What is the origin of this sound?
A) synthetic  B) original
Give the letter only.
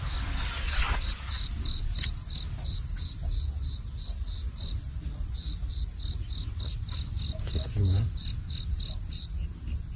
B